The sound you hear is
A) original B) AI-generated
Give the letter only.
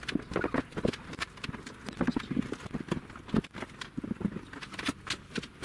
A